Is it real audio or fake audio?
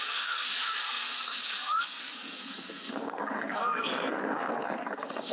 fake